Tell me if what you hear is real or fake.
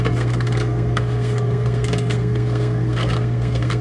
fake